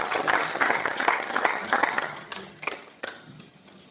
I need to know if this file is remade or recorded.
remade